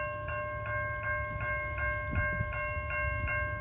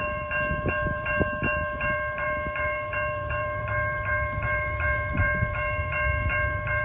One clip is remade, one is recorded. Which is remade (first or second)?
second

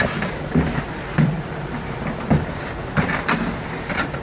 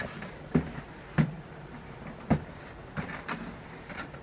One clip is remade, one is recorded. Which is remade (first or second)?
second